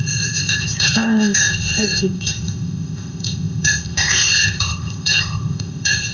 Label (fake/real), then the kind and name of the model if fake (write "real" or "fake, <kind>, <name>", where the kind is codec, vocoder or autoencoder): fake, codec, ZipCodec